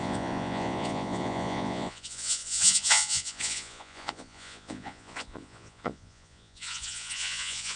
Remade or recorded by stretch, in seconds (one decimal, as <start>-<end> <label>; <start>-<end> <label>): 0.0-7.8 remade